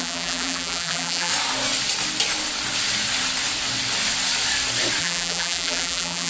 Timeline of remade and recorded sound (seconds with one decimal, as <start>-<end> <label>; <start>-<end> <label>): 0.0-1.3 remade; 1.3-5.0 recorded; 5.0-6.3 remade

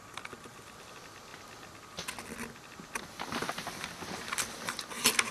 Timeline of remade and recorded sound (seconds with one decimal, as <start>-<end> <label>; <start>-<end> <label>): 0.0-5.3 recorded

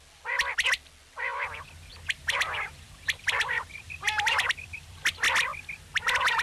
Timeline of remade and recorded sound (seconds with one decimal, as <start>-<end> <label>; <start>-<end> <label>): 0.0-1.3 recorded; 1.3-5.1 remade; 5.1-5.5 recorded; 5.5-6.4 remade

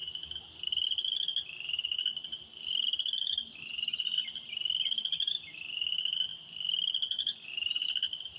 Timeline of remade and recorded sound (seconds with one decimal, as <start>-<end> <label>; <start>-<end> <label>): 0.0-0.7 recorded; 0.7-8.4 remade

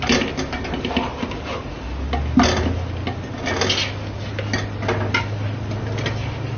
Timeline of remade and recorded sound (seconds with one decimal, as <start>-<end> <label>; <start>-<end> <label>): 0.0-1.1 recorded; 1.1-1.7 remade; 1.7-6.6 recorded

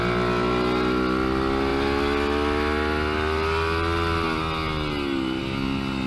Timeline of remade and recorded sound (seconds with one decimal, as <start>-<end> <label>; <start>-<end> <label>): 0.0-6.1 recorded

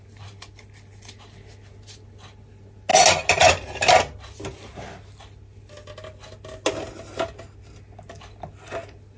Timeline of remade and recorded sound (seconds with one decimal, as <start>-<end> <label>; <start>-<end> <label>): 0.0-9.2 recorded